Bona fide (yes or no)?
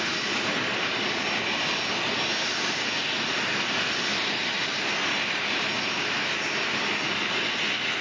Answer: yes